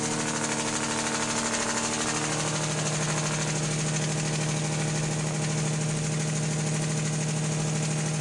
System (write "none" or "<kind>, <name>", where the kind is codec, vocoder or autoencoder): none